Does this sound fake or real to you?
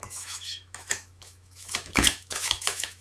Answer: fake